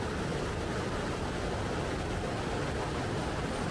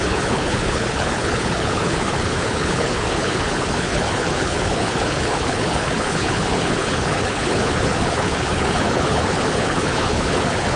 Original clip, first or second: first